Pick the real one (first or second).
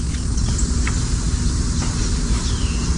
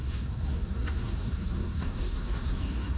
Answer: first